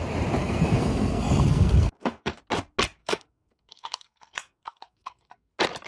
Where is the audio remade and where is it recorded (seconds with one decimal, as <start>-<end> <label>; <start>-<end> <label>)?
0.0-0.4 recorded; 0.4-2.4 remade; 2.4-3.0 recorded; 3.0-5.5 remade; 5.5-5.9 recorded